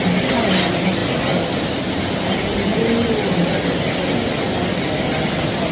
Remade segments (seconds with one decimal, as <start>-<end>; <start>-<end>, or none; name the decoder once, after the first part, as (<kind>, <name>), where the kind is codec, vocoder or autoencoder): none